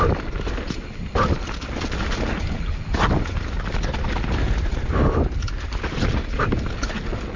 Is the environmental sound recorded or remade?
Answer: recorded